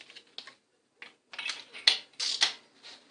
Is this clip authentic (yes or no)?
yes